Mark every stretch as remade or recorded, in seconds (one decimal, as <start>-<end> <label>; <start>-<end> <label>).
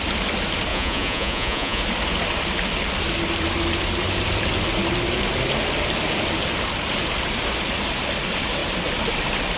0.0-0.7 recorded; 0.7-1.8 remade; 1.8-9.6 recorded